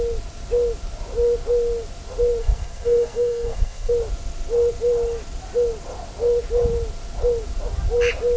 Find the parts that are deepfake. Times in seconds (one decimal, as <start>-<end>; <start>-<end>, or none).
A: 2.4-3.9